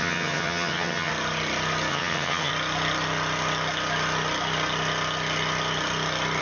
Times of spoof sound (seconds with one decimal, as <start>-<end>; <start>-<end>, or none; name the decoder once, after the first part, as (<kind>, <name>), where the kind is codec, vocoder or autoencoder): 0.0-1.1 (vocoder, HiFi-GAN); 1.9-2.5